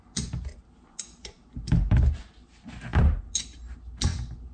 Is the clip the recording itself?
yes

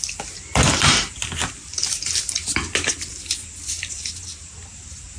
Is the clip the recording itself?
yes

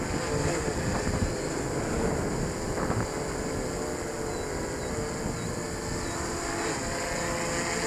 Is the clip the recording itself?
yes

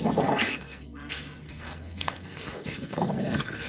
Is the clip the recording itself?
no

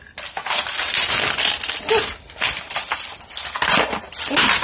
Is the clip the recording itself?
yes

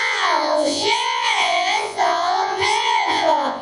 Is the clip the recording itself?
no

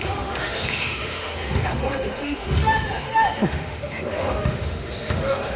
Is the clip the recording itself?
no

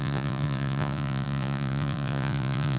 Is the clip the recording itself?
no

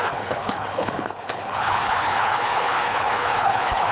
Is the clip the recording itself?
no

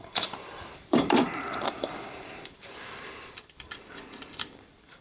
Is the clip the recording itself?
no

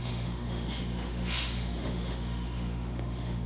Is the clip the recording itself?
no